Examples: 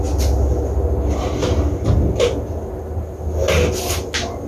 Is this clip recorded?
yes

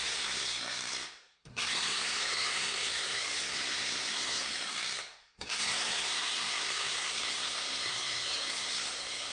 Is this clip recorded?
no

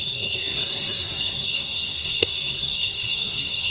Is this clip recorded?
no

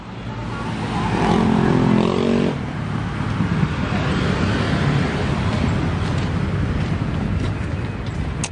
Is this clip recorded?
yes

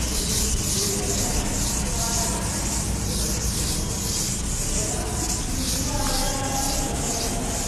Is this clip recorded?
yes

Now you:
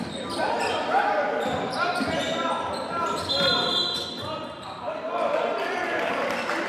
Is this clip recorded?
yes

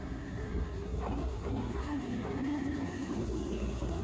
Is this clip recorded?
no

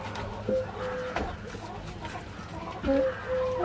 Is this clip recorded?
yes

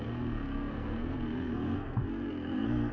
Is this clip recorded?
no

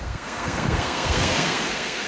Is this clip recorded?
no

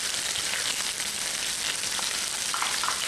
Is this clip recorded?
yes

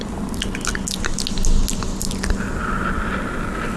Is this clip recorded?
yes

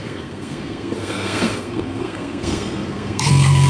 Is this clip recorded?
no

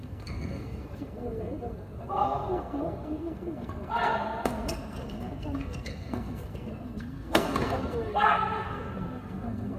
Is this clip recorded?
no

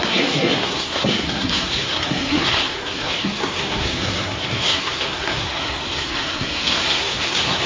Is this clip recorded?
no